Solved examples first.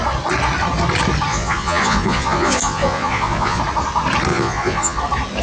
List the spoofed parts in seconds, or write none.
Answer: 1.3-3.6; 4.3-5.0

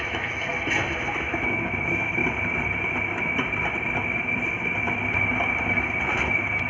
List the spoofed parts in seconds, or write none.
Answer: 0.0-0.5; 1.3-2.2; 5.5-6.7

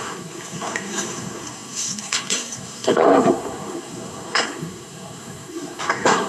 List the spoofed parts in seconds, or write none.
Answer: 0.0-6.3

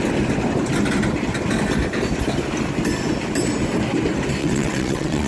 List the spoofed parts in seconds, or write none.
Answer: 4.4-5.3